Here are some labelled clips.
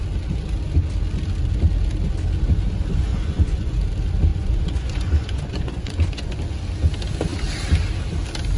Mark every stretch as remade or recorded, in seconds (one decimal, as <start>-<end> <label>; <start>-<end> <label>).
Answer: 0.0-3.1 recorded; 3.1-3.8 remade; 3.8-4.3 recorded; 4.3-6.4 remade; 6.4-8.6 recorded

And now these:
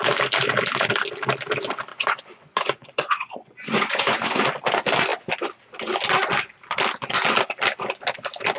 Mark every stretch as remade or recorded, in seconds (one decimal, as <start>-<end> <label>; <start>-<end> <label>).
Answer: 0.0-1.9 recorded; 1.9-4.4 remade; 4.4-8.6 recorded

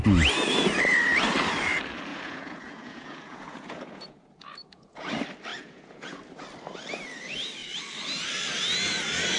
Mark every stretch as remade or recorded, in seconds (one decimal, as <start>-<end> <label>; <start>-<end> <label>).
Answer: 0.0-2.1 recorded; 2.1-5.1 remade; 5.1-5.5 recorded; 5.5-6.2 remade; 6.2-9.4 recorded

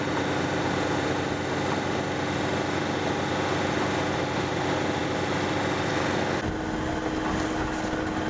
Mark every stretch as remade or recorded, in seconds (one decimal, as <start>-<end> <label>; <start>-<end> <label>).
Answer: 0.0-8.3 recorded

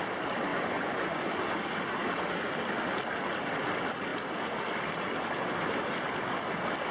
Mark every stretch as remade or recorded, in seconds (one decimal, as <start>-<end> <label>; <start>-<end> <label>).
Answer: 0.0-0.5 recorded; 0.5-1.3 remade; 1.3-6.9 recorded